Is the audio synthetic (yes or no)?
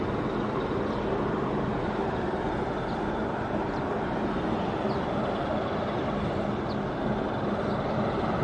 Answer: no